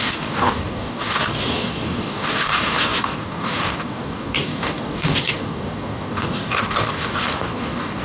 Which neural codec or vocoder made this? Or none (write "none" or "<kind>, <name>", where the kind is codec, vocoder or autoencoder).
codec, DAC